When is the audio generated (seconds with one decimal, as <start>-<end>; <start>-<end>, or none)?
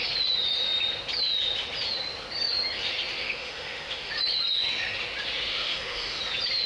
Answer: 3.2-4.1; 5.5-6.2